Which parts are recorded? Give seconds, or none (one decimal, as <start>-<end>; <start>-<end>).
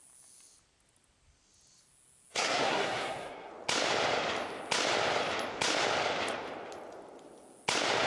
0.0-2.3; 3.5-8.1